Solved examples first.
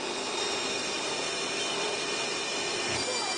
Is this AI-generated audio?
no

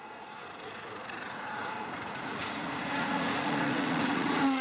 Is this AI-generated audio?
yes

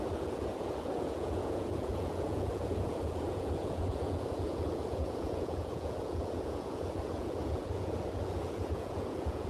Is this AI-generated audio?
yes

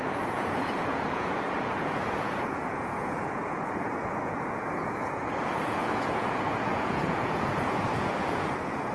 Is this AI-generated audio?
yes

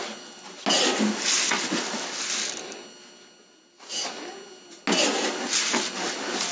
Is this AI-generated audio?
no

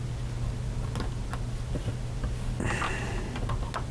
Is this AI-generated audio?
no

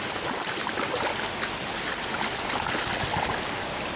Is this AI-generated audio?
no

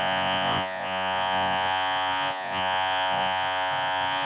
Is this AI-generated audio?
yes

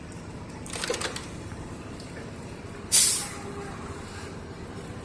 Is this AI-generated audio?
no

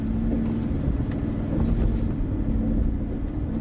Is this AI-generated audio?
no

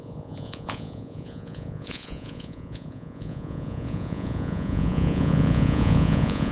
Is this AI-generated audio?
yes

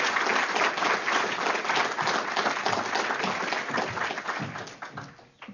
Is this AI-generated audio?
no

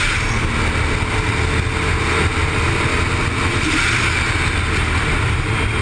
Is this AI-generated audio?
no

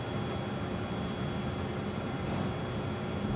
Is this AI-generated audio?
no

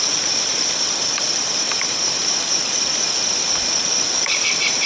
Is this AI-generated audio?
no